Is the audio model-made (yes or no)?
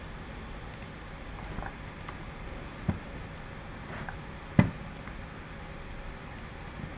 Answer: no